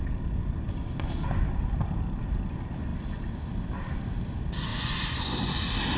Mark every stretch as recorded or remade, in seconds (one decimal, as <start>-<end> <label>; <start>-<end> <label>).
0.0-4.7 recorded; 4.7-5.5 remade; 5.5-6.0 recorded